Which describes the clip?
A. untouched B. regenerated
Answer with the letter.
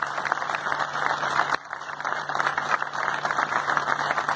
A